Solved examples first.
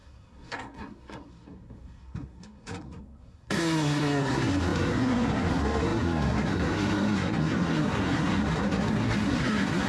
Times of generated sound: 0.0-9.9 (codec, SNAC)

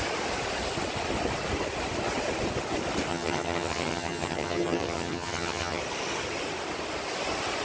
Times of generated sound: 3.1-5.8 (vocoder, HiFi-GAN)

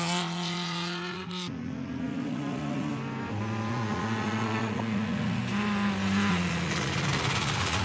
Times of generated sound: 0.0-2.9 (vocoder, Vocos); 3.7-5.4; 6.3-7.8

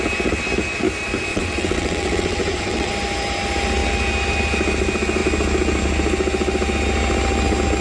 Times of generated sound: 1.3-2.9 (vocoder, WaveNeXt)

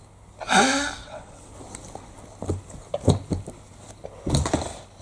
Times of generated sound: 1.0-1.5 (vocoder, WaveNeXt)

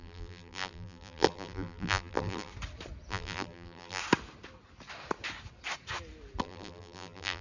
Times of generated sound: 0.0-2.5 (vocoder, BigVGAN v2); 3.1-4.0; 6.4-7.4

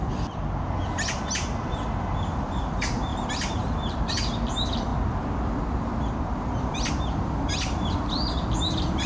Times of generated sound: 3.1-4.1 (vocoder, BigVGAN v2)

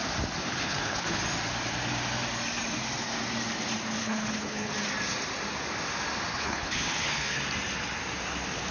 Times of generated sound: 0.4-1.2 (codec, HILCodec); 4.0-4.7; 6.3-7.4